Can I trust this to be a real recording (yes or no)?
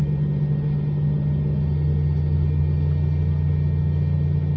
yes